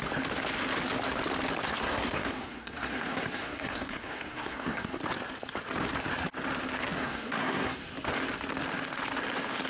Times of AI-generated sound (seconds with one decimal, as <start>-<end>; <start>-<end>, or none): 1.7-5.0; 7.0-7.8